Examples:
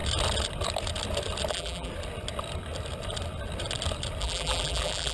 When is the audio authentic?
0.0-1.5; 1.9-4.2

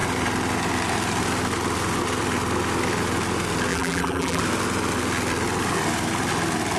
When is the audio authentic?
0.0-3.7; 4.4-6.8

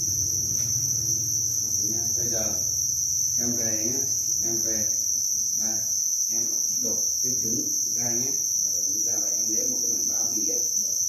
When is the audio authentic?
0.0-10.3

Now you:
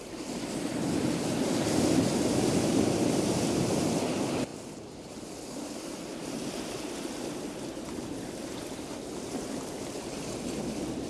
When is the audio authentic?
0.0-11.1

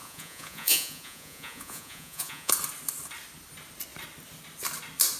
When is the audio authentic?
2.5-5.2

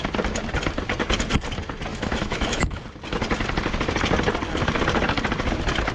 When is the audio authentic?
0.0-1.9; 2.8-5.9